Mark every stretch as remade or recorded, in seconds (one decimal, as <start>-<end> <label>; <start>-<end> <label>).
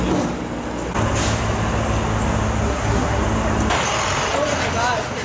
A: 0.0-2.6 recorded; 2.6-3.2 remade; 3.2-5.2 recorded